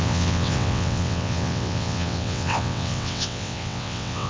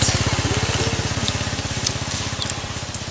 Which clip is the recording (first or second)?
second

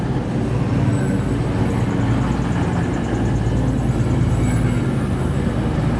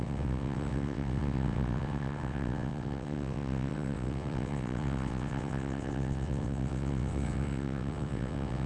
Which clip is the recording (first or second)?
first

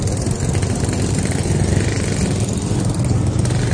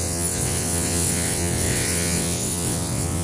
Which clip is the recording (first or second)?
first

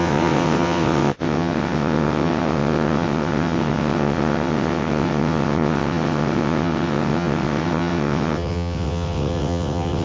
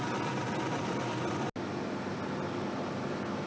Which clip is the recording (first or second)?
second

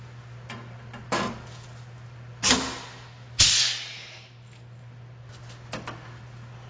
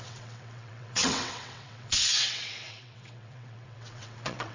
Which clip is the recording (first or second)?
first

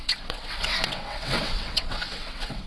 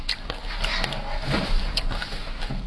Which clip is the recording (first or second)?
second